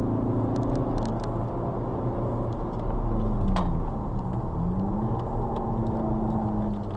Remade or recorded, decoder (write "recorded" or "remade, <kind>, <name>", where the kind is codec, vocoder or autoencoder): recorded